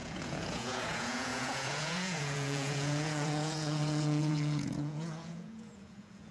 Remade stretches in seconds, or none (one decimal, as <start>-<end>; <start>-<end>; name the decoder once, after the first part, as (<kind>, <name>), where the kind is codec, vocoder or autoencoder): 0.0-6.3 (vocoder, Vocos)